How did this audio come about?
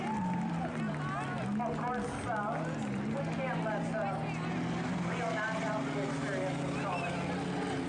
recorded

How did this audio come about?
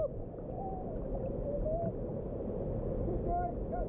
recorded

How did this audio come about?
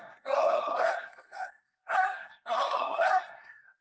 remade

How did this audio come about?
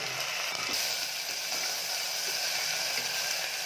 recorded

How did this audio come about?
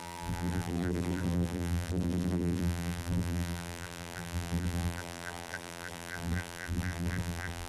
remade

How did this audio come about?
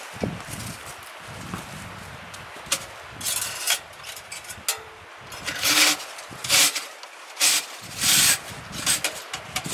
recorded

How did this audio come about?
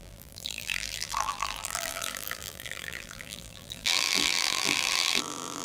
remade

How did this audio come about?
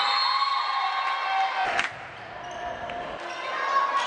recorded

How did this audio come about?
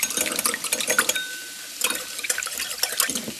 recorded